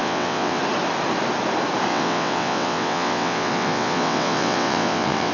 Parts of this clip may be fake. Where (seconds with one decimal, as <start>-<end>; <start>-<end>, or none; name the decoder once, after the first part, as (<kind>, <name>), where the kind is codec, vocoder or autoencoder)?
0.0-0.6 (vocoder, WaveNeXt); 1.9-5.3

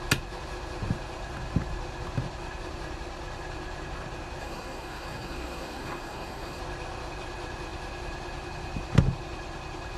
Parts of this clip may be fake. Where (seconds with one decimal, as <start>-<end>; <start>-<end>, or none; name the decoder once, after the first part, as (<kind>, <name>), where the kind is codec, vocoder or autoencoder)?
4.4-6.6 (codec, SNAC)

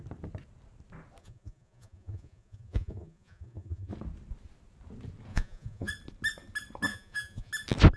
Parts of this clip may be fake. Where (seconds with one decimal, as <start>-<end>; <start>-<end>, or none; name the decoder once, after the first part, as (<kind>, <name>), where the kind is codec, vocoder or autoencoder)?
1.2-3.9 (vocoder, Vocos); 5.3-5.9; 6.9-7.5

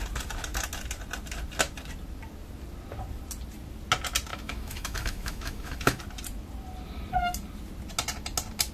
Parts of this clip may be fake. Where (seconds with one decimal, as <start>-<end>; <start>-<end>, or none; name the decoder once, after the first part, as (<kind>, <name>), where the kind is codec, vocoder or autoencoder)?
4.3-6.0 (autoencoder, DAC-VAE)